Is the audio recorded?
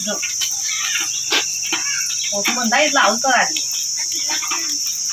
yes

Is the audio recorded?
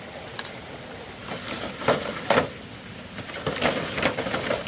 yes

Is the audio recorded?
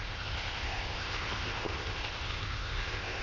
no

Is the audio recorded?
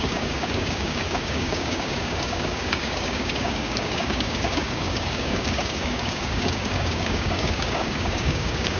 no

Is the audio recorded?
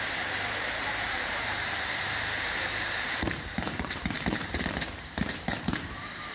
no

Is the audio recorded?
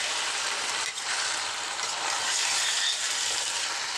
no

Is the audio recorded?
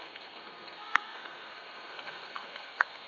no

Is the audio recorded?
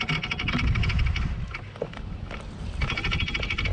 yes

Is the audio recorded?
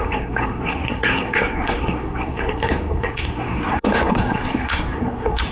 no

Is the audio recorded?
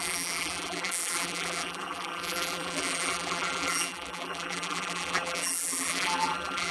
no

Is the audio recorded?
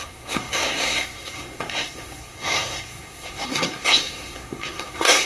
no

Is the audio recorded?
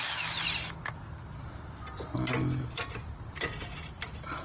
yes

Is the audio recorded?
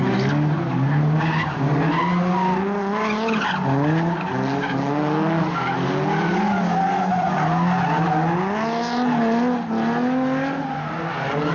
yes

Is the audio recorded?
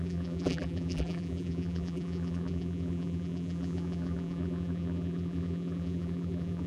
no